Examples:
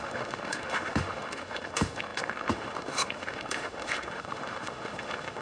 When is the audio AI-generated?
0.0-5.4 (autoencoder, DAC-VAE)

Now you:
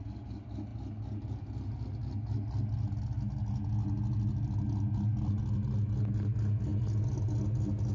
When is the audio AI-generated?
none

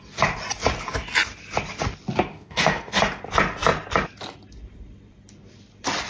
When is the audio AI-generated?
2.3-3.0 (autoencoder, DAC-VAE)

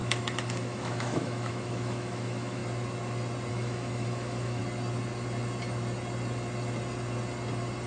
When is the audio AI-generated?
0.0-2.6 (autoencoder, DAC-VAE); 3.5-4.6

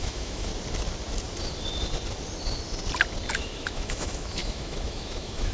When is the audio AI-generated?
0.0-0.5 (autoencoder, DAC-VAE); 3.3-5.5

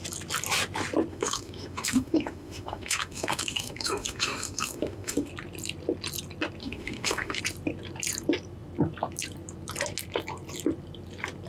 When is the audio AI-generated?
1.1-5.3 (autoencoder, DAC-VAE); 6.6-7.4